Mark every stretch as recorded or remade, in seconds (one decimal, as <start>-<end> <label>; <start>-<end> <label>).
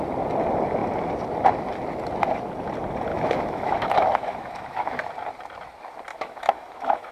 0.0-3.1 recorded; 3.1-5.0 remade; 5.0-6.1 recorded; 6.1-7.1 remade